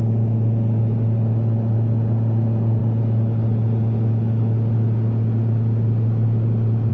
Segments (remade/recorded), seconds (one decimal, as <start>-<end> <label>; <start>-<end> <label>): 0.0-6.9 recorded